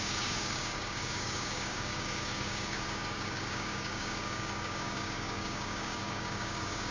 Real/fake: fake